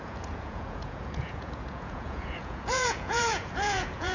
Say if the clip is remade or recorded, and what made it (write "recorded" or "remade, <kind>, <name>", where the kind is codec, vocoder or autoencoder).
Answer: remade, vocoder, Vocos